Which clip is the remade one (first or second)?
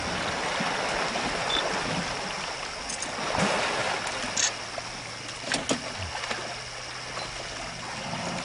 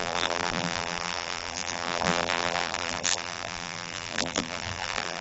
second